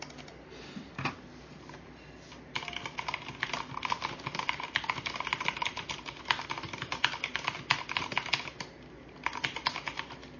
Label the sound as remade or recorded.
recorded